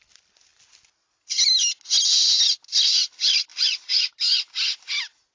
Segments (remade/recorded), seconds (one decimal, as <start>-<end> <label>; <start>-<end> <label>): 0.0-5.3 recorded